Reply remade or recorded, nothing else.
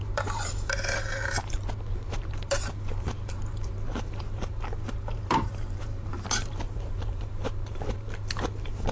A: remade